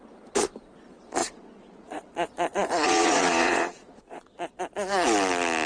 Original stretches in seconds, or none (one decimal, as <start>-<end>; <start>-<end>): 0.0-1.2; 4.6-5.7